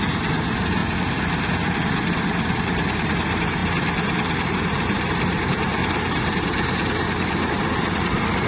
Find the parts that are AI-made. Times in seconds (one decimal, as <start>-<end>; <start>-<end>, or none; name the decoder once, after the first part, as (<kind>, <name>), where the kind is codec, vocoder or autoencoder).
0.0-0.8 (vocoder, BigVGAN v2); 2.6-3.6; 4.5-8.5